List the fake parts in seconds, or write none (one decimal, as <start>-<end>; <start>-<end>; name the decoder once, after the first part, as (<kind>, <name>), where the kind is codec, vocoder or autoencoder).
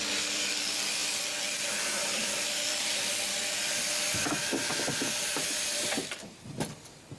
0.0-4.7 (vocoder, BigVGAN v2); 5.3-7.2